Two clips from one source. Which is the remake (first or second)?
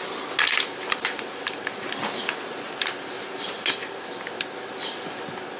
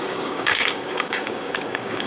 second